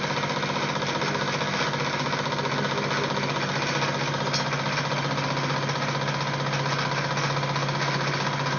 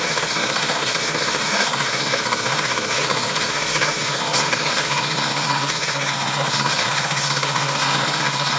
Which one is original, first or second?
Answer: first